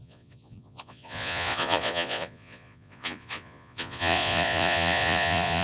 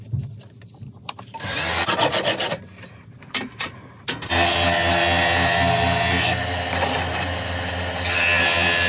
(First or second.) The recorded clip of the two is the second